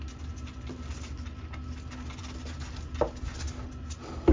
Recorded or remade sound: recorded